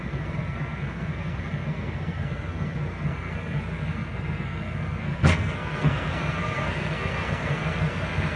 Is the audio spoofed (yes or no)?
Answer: yes